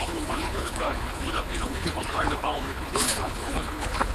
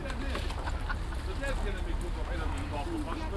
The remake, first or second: first